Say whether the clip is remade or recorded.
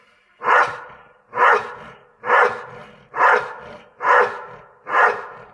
recorded